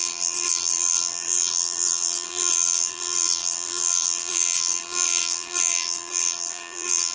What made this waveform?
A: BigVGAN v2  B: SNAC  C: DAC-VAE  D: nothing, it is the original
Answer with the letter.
A